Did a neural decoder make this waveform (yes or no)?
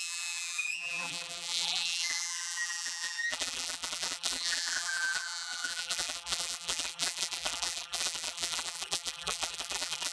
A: yes